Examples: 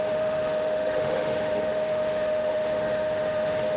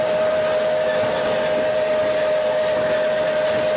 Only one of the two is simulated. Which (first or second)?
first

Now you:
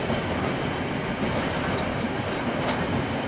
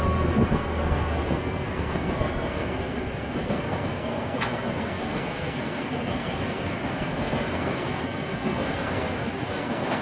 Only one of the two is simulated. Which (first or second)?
second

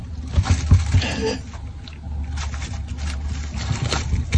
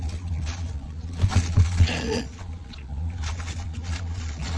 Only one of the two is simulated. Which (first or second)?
second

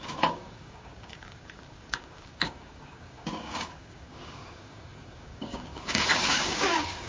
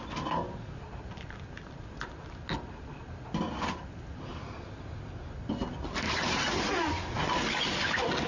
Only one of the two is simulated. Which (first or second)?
first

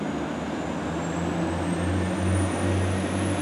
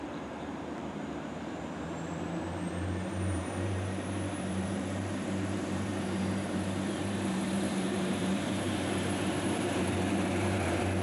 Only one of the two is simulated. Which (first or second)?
second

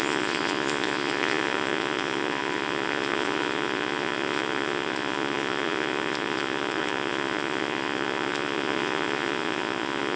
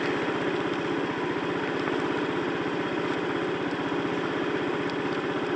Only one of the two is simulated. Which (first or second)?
first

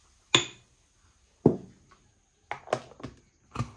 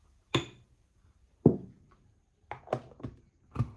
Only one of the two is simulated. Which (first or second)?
second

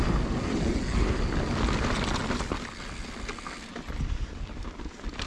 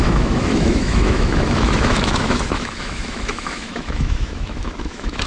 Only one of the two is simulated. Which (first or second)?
second